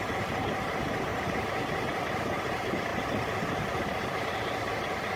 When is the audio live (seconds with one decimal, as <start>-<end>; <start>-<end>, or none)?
0.0-1.1; 2.0-5.2